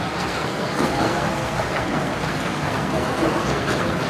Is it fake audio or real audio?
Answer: fake